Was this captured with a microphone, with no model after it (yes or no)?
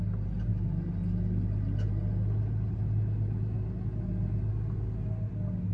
yes